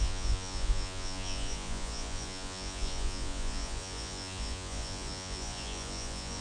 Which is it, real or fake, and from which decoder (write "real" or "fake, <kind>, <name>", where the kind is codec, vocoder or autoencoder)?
fake, vocoder, Vocos